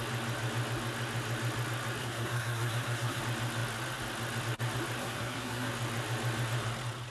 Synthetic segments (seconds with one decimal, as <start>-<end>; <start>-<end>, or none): 2.0-3.2; 5.0-5.7